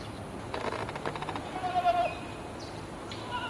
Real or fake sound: real